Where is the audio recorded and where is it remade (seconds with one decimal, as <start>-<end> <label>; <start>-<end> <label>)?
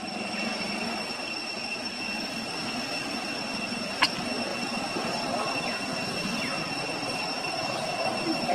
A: 0.0-8.5 recorded